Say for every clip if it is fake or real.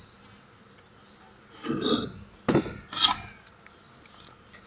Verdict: real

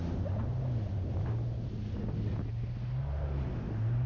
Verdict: real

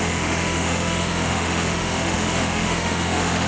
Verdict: fake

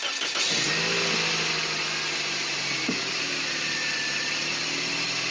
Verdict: real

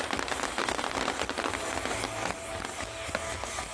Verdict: real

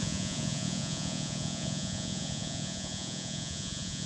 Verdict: fake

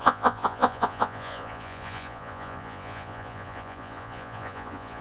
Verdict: fake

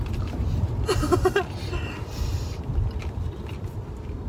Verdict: real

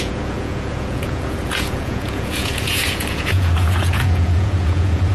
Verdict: fake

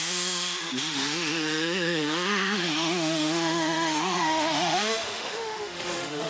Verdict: fake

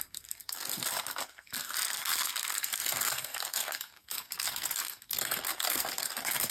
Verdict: fake